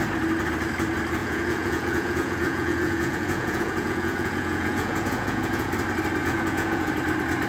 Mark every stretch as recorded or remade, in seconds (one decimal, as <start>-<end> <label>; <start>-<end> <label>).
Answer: 0.0-1.2 recorded; 1.2-5.7 remade; 5.7-6.2 recorded; 6.2-6.9 remade; 6.9-7.5 recorded